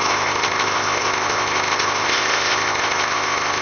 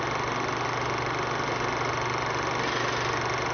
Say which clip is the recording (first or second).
second